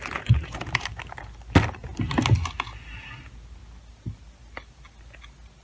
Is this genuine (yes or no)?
yes